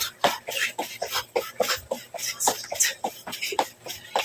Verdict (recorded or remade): recorded